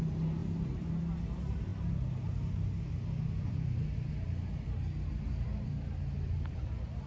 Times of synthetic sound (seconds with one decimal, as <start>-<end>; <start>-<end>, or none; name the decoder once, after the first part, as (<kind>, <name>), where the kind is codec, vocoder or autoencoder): none